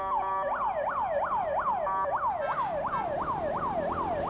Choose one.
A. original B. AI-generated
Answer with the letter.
A